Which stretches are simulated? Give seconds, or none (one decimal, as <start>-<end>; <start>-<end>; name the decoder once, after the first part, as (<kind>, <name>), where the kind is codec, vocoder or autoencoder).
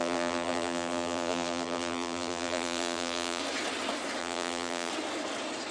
0.0-3.4 (vocoder, BigVGAN v2); 4.2-4.9